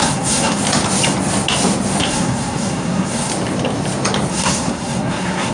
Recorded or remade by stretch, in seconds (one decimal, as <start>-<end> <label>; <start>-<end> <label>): 0.0-0.6 remade; 0.6-2.0 recorded; 2.0-3.3 remade; 3.3-4.3 recorded; 4.3-5.5 remade

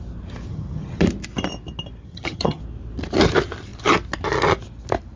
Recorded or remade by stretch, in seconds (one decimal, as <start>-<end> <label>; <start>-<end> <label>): 0.0-0.5 recorded; 0.5-1.0 remade; 1.0-2.0 recorded; 2.0-2.6 remade; 2.6-5.2 recorded

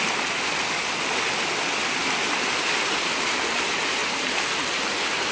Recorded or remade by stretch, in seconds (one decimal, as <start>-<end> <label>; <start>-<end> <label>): 0.0-5.3 recorded

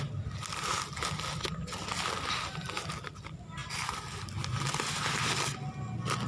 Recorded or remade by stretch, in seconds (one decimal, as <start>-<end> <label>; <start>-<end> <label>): 0.0-6.3 recorded

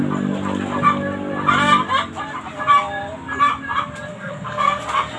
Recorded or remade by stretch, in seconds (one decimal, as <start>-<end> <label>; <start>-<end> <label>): 0.0-4.1 recorded; 4.1-4.8 remade; 4.8-5.2 recorded

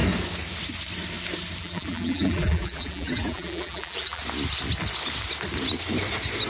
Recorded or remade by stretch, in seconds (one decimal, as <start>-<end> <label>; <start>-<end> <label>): 0.0-1.6 recorded; 1.6-4.2 remade; 4.2-6.5 recorded

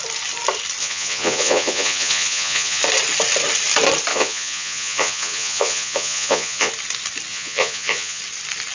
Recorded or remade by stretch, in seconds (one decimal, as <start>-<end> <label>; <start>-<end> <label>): 0.0-0.8 recorded; 0.8-2.8 remade; 2.8-4.1 recorded; 4.1-6.7 remade; 6.7-7.3 recorded; 7.3-8.2 remade; 8.2-8.7 recorded

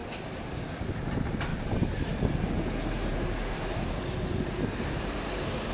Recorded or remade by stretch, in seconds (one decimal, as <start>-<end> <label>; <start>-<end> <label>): 0.0-1.5 recorded; 1.5-2.1 remade; 2.1-3.1 recorded; 3.1-3.8 remade; 3.8-5.7 recorded